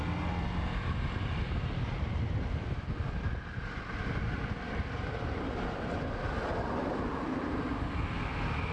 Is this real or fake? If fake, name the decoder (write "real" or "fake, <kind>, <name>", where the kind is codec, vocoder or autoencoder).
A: real